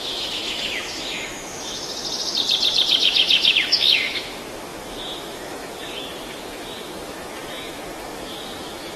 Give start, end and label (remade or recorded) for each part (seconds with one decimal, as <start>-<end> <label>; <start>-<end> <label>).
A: 0.0-2.0 remade; 2.0-3.0 recorded; 3.0-9.0 remade